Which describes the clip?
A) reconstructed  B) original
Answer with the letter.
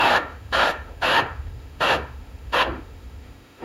A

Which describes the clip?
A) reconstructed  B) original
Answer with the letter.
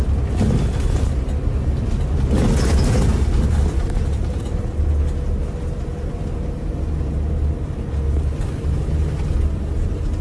B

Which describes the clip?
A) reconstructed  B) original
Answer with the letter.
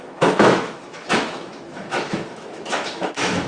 A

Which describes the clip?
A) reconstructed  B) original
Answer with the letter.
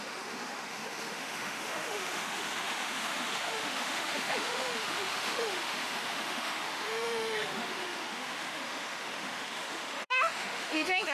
A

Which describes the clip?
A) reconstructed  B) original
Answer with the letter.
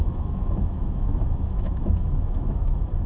A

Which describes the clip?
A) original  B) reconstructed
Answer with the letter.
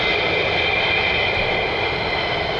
A